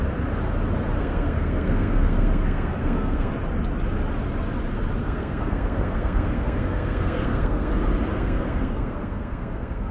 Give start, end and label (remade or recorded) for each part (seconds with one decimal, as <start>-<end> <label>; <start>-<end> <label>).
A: 0.0-1.0 recorded; 1.0-3.3 remade; 3.3-5.0 recorded; 5.0-7.7 remade; 7.7-8.1 recorded; 8.1-9.9 remade